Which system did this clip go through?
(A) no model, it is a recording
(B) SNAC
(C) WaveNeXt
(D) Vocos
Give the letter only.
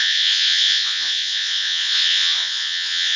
D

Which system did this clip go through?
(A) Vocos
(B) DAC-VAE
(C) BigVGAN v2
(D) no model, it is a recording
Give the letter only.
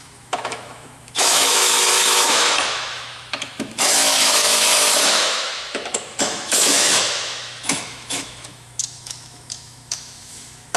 B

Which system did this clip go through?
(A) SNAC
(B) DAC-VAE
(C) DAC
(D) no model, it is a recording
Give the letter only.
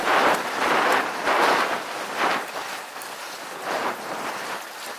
D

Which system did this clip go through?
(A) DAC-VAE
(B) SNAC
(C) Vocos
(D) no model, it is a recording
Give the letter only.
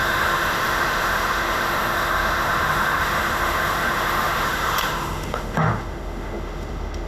A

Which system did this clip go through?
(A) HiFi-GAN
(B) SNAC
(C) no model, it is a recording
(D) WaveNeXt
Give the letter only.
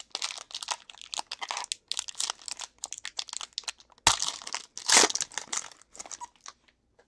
C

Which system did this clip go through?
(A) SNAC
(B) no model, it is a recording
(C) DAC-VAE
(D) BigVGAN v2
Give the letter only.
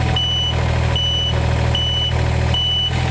B